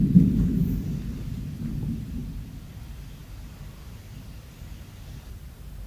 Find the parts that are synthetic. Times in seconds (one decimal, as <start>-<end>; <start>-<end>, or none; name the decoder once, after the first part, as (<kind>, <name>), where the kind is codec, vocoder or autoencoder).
2.2-2.8 (vocoder, BigVGAN v2)